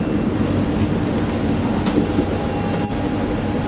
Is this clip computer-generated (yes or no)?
no